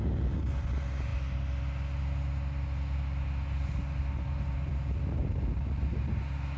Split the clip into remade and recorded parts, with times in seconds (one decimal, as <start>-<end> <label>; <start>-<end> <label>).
0.0-6.6 recorded